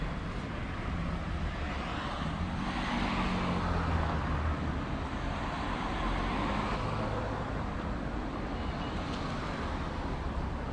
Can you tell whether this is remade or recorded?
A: recorded